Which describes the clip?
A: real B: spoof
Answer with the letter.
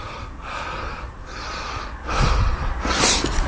A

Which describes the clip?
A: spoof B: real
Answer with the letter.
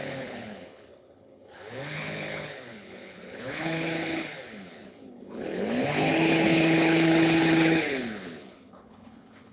A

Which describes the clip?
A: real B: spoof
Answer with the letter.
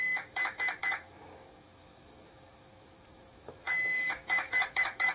B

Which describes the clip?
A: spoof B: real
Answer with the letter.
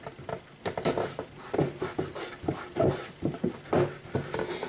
B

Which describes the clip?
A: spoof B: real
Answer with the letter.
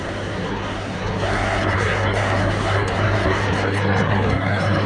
A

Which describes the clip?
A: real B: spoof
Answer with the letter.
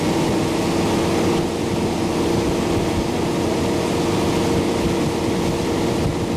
A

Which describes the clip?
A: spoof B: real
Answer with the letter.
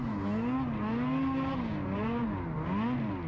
B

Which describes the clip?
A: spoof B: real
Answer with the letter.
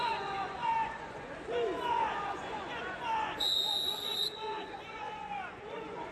A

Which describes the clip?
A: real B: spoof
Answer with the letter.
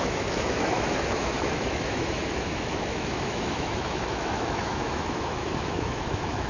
B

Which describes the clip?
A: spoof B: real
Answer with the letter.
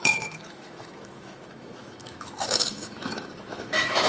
A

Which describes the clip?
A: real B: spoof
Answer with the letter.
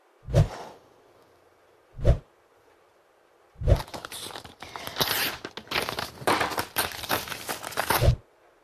A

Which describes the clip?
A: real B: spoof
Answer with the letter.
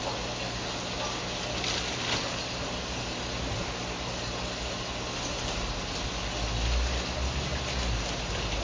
A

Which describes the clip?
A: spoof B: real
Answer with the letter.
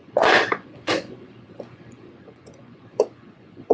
A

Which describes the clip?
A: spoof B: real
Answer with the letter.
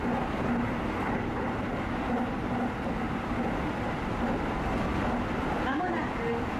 B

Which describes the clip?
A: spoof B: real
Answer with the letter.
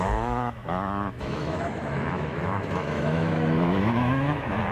A